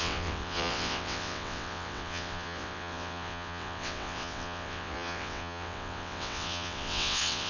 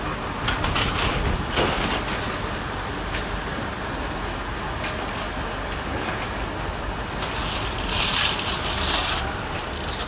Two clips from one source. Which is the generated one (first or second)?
first